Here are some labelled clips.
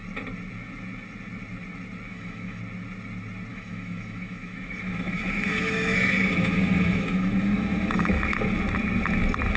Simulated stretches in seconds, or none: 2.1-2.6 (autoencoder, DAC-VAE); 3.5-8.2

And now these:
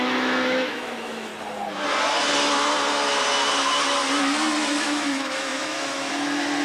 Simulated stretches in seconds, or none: 0.0-1.3 (autoencoder, DAC-VAE); 4.8-6.6

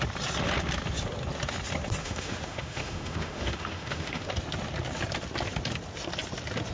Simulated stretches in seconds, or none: 2.0-4.3 (autoencoder, DAC-VAE)

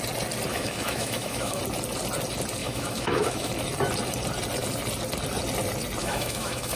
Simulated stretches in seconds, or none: 0.5-1.6 (autoencoder, DAC-VAE); 2.6-3.5; 6.0-6.8